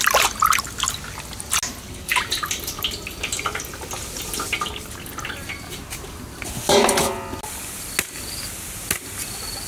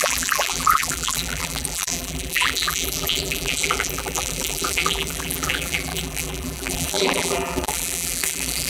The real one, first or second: first